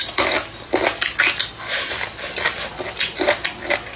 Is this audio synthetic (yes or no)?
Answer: no